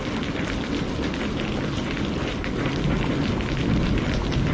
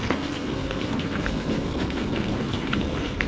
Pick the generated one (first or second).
second